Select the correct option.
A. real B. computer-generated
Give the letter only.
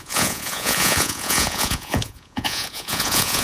B